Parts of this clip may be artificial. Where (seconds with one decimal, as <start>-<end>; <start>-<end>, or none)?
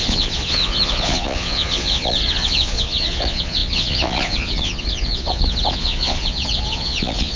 0.0-7.4